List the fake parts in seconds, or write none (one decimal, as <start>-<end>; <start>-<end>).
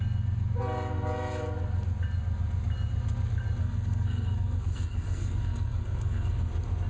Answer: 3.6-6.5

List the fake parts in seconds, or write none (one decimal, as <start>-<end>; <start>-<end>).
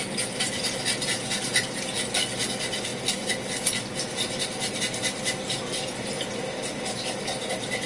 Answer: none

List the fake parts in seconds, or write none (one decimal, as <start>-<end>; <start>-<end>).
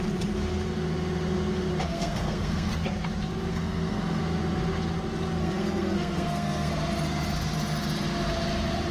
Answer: 1.9-2.7; 3.5-4.2; 5.4-6.7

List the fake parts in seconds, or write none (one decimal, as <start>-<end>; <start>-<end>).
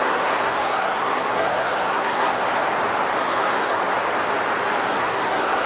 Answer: 0.0-2.4; 3.2-3.8; 4.9-5.7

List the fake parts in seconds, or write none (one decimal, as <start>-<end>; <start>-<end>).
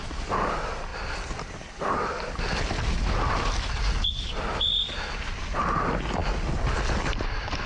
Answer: none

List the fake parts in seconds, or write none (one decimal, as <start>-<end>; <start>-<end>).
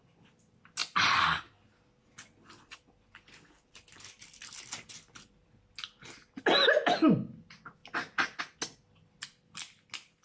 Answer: none